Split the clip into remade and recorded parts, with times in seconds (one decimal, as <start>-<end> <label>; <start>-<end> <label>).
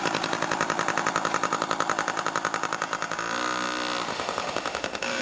0.0-4.1 recorded; 4.1-5.2 remade